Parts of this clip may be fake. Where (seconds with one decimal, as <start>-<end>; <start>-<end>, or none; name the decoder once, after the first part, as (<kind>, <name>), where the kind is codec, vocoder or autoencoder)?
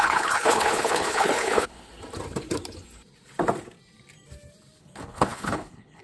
0.0-1.9 (codec, HILCodec); 4.8-6.0